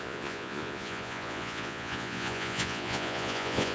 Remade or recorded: remade